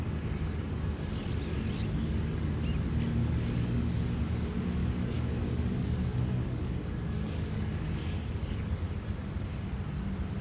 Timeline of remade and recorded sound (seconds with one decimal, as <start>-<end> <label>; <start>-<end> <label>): 0.0-2.0 recorded; 2.0-2.5 remade; 2.5-3.2 recorded; 3.2-4.0 remade; 4.0-4.8 recorded; 4.8-8.8 remade; 8.8-10.4 recorded